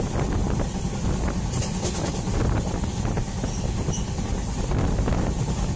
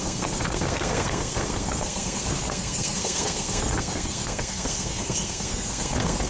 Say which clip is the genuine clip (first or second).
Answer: first